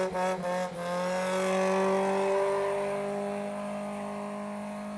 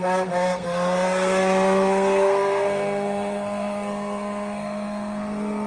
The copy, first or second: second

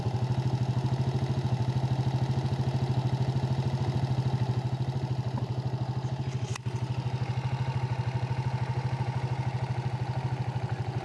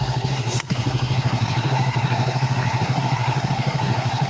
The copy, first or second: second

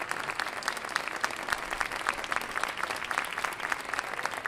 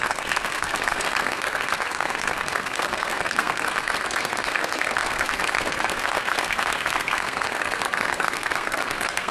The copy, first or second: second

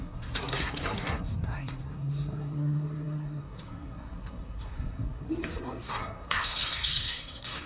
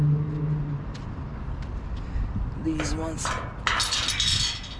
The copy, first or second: first